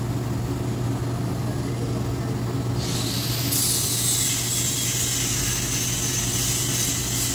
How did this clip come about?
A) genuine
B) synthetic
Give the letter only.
A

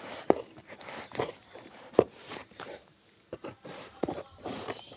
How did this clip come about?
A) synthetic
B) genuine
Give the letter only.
A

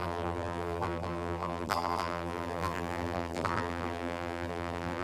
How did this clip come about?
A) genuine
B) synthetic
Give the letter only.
B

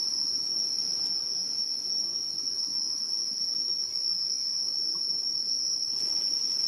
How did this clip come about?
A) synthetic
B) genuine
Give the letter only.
B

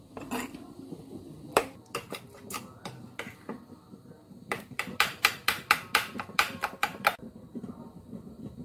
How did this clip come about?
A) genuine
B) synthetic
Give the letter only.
B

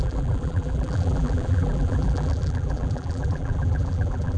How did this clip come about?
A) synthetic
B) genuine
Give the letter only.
A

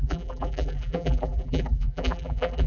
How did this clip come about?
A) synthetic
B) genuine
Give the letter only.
A